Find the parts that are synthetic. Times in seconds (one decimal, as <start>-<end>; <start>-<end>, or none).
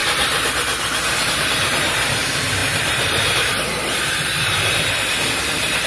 1.0-5.9